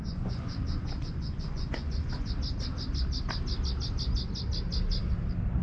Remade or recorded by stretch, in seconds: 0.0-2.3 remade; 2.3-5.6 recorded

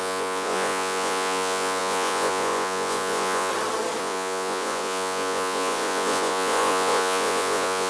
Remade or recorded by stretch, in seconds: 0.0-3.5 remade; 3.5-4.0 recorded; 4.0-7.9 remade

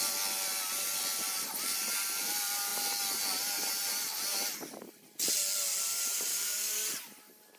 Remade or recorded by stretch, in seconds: 0.0-6.3 recorded; 6.3-6.9 remade; 6.9-7.6 recorded

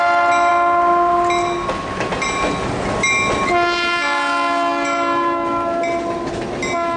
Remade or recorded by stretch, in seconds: 0.0-7.0 recorded

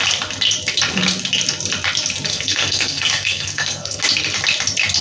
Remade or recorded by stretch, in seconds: 0.0-2.3 recorded; 2.3-4.0 remade; 4.0-5.0 recorded